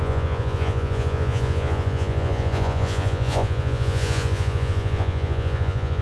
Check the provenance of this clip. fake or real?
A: fake